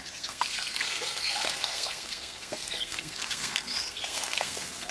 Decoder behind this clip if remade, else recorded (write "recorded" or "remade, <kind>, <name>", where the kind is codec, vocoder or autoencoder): remade, codec, SNAC